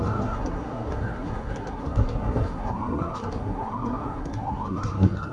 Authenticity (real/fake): fake